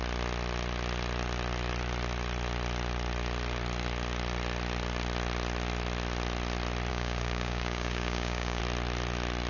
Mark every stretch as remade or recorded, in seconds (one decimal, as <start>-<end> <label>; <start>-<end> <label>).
0.0-6.9 recorded; 6.9-8.6 remade; 8.6-9.5 recorded